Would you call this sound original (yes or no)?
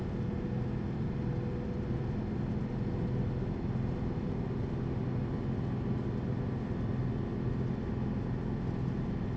yes